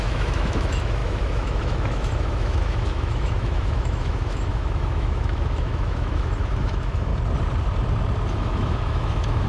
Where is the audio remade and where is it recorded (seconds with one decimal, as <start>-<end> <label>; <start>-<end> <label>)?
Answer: 0.0-7.1 remade; 7.1-8.3 recorded; 8.3-9.5 remade